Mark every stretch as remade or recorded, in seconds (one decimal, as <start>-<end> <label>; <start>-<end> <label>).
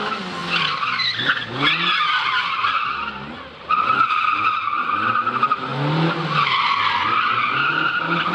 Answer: 0.0-8.3 recorded